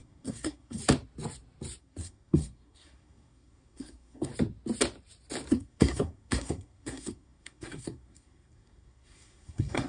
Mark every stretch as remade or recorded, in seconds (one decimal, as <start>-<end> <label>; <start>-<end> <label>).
0.0-0.8 remade; 0.8-1.8 recorded; 1.8-4.3 remade; 4.3-5.5 recorded; 5.5-9.9 remade